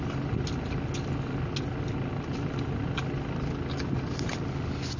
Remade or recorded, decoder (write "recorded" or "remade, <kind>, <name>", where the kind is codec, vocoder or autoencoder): recorded